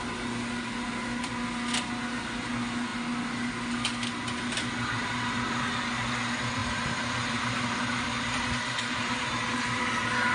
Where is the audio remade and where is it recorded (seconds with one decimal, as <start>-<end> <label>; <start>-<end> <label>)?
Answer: 0.0-6.6 recorded; 6.6-9.8 remade; 9.8-10.3 recorded